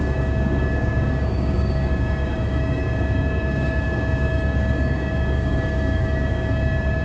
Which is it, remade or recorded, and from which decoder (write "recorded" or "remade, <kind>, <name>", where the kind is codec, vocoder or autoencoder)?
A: remade, codec, DAC